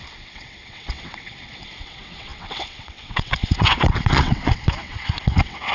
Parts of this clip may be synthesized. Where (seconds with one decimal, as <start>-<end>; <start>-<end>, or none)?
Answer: 0.0-5.7

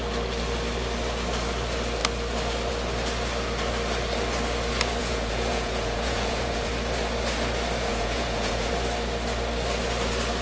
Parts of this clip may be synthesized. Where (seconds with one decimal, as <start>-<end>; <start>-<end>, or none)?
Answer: 5.0-6.7; 7.9-8.7